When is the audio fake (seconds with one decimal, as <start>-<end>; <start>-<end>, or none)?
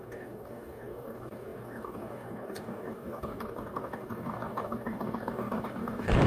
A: 0.0-6.3